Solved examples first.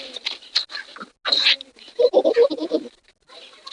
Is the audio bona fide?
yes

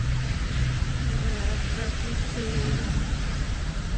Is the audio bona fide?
no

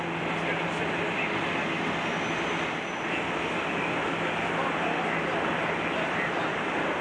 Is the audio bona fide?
yes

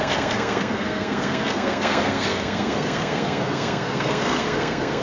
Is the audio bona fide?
no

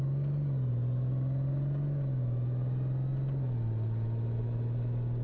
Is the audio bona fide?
yes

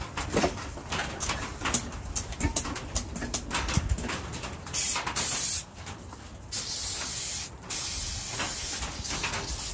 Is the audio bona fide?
yes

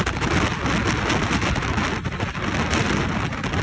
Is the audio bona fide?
yes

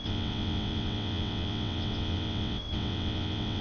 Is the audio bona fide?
no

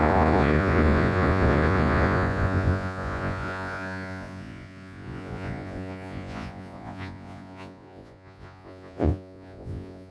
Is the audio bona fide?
no